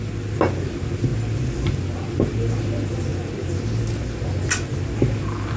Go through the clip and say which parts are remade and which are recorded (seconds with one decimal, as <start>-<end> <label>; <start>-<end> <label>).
0.0-5.6 recorded